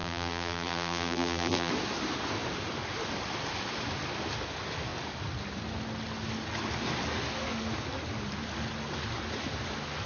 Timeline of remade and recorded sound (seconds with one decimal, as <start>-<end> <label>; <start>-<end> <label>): 0.0-1.7 remade; 1.7-10.1 recorded